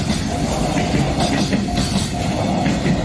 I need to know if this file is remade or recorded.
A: recorded